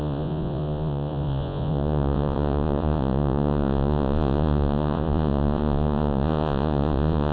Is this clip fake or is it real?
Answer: fake